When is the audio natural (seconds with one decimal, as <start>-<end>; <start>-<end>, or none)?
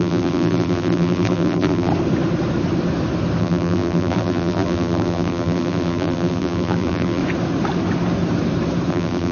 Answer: 1.9-3.4; 7.2-8.9